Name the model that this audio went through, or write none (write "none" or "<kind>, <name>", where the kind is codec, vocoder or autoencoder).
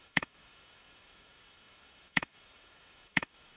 autoencoder, DAC-VAE